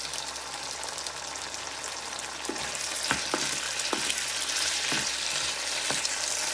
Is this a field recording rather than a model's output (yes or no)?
yes